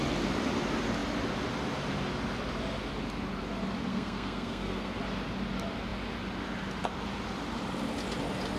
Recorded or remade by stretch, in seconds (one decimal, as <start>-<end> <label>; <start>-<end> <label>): 0.0-3.9 recorded; 3.9-5.0 remade; 5.0-8.6 recorded